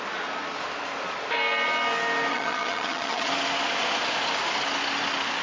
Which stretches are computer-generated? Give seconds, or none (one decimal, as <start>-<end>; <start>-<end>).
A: 2.3-3.3